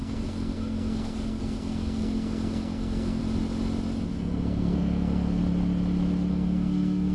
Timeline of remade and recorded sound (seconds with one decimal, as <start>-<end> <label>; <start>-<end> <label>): 0.0-3.2 remade; 3.2-4.1 recorded; 4.1-5.4 remade; 5.4-6.3 recorded; 6.3-7.1 remade